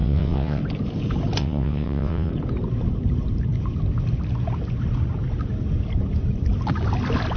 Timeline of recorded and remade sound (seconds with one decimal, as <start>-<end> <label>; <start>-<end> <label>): 0.0-0.6 remade; 0.6-1.4 recorded; 1.4-2.3 remade; 2.3-7.4 recorded